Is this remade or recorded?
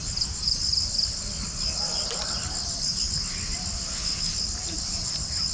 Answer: recorded